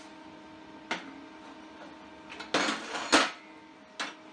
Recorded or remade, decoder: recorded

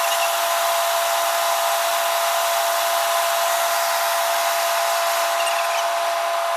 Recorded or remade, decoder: recorded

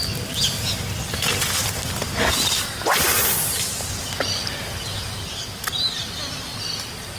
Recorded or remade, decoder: recorded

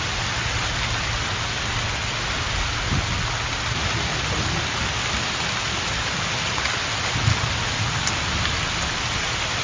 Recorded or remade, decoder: recorded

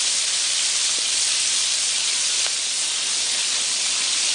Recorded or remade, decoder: recorded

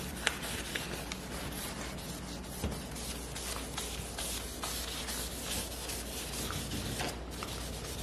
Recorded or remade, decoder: recorded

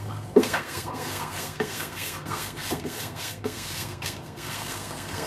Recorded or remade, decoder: remade, codec, SNAC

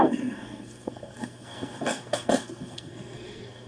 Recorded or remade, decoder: remade, codec, SNAC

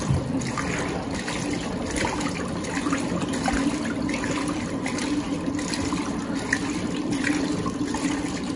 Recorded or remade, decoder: recorded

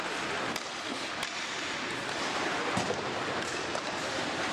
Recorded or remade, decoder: recorded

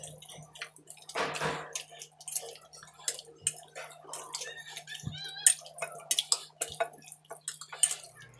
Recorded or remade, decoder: recorded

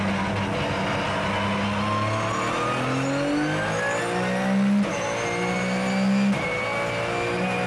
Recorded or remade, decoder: recorded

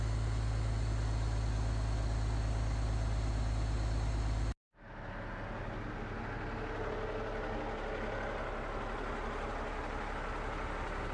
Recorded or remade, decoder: recorded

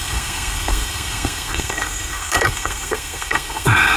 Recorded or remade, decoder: remade, codec, SNAC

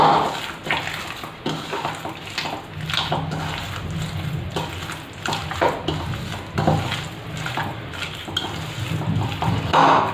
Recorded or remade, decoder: recorded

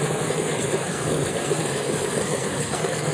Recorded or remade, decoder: remade, codec, SNAC